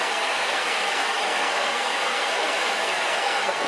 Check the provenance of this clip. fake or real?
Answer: fake